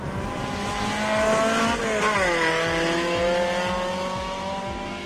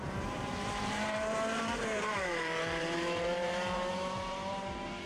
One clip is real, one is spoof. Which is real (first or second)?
first